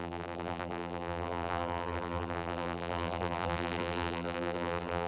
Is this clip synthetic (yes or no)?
yes